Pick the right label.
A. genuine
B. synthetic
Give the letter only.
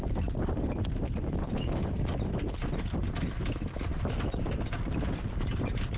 A